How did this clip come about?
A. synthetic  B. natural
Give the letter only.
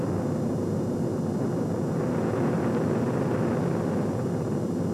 B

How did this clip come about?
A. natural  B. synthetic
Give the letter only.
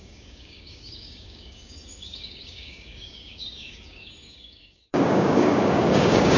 B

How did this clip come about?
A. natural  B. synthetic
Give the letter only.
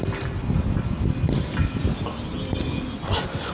A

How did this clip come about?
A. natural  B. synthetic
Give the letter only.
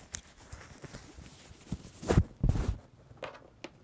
A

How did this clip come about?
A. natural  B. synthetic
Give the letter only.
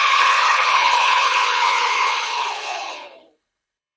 B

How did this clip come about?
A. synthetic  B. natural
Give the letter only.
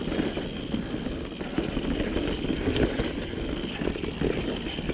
B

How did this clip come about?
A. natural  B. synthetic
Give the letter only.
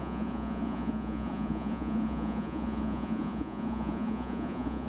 B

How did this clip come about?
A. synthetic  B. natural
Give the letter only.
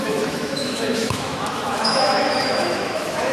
A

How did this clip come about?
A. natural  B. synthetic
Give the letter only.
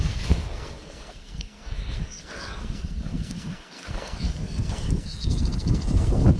B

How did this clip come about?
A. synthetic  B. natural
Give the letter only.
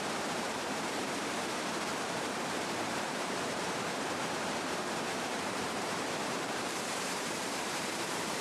A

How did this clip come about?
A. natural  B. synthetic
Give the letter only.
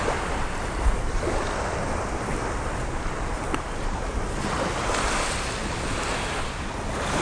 A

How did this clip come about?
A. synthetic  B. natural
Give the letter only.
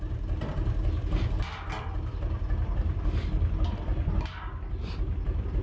B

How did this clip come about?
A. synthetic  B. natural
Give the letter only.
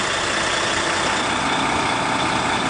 A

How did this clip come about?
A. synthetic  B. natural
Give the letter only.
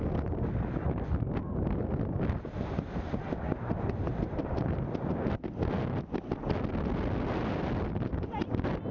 B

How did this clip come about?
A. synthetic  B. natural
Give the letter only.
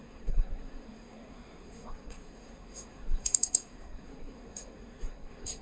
A